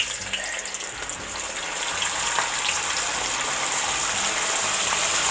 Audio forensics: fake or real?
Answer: real